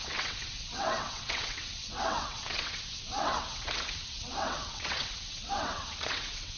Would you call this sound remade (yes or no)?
yes